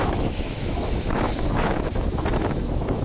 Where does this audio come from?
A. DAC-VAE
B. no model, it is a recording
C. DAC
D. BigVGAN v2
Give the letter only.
A